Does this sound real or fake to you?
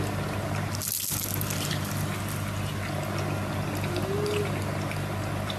real